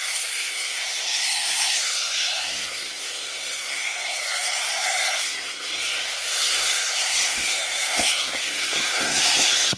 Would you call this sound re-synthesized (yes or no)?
yes